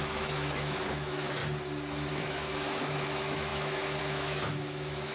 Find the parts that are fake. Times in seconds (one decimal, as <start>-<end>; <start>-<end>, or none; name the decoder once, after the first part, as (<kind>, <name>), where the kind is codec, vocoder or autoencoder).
0.0-1.4 (autoencoder, DAC-VAE); 2.1-5.1